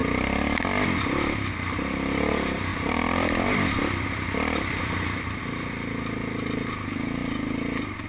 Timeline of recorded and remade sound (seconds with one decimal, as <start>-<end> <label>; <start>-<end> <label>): 0.0-2.7 recorded; 2.7-5.4 remade; 5.4-8.1 recorded